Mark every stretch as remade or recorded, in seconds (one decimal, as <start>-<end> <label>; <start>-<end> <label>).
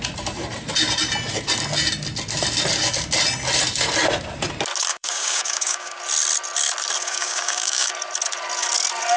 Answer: 0.0-4.9 recorded; 4.9-6.0 remade; 6.0-7.0 recorded; 7.0-7.9 remade; 7.9-9.2 recorded